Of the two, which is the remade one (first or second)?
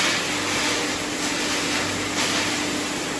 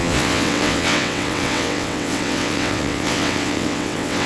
second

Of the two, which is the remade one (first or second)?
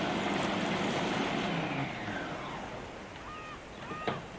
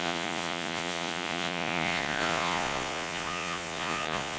second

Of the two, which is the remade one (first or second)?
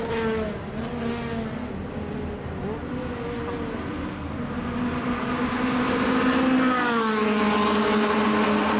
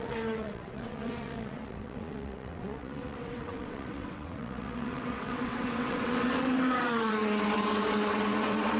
second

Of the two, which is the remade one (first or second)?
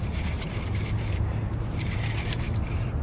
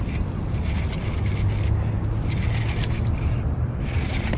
first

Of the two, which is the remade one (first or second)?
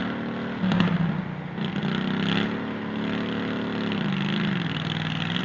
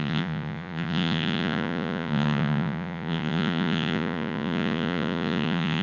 second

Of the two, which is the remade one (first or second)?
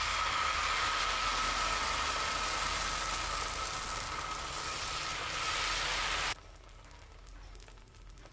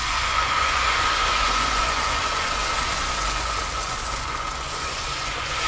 second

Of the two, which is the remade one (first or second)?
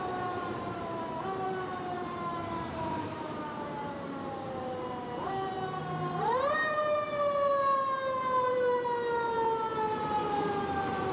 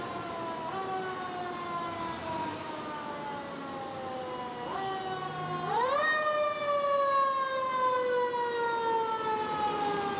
first